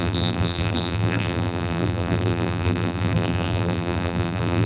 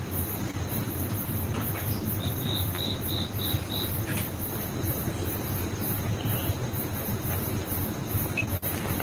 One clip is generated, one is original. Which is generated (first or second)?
first